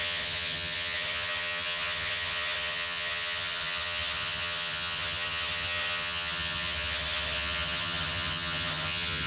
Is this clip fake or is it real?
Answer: fake